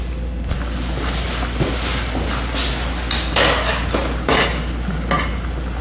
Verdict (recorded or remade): recorded